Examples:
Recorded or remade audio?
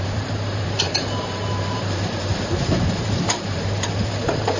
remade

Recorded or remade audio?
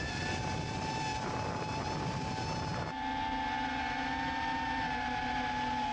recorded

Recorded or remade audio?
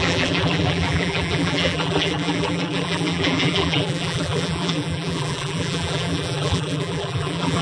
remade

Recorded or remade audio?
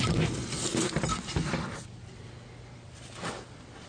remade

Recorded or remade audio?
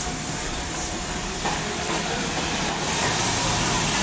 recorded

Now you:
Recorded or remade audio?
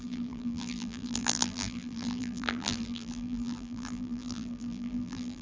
remade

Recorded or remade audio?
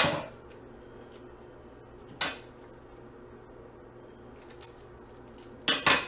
recorded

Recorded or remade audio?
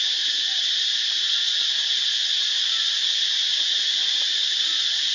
recorded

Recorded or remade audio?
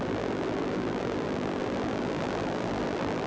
remade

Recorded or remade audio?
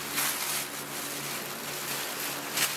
recorded